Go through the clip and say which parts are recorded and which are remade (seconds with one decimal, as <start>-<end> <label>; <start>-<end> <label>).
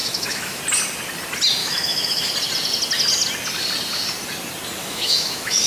0.0-0.6 remade; 0.6-1.6 recorded; 1.6-2.3 remade; 2.3-4.8 recorded; 4.8-5.7 remade